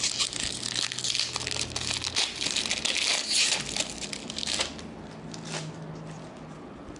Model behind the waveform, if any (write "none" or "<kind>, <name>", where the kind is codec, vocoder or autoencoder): none